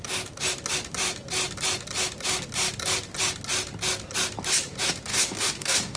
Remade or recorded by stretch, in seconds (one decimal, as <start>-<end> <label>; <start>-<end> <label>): 0.0-5.1 recorded; 5.1-6.0 remade